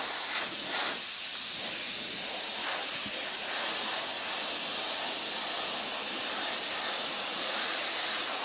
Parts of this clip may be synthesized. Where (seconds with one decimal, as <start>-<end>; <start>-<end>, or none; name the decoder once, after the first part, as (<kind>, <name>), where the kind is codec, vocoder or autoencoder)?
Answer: 0.0-4.1 (vocoder, Vocos); 7.1-8.4